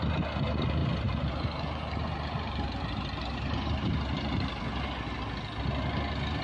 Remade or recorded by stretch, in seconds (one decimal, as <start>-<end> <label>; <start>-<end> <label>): 0.0-0.8 recorded; 0.8-4.6 remade; 4.6-6.4 recorded